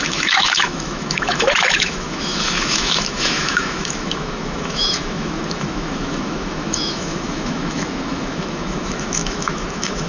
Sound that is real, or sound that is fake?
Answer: fake